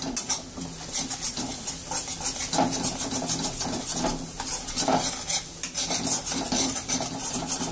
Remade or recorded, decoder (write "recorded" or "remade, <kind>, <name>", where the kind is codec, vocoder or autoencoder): recorded